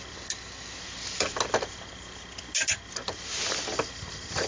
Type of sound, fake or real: real